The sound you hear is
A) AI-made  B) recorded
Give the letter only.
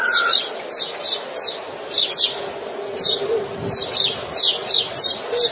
B